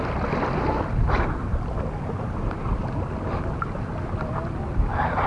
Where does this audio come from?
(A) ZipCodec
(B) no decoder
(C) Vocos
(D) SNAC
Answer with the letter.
B